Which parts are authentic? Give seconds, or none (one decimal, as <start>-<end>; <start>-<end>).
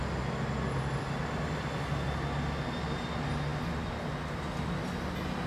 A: 0.0-5.5